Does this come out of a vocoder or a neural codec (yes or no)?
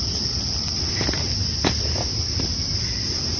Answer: no